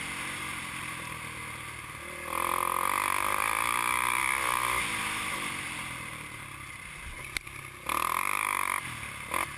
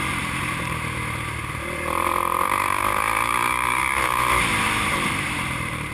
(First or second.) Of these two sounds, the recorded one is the first